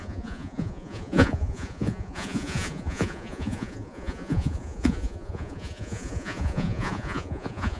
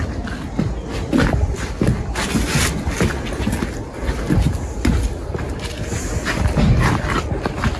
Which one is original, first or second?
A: second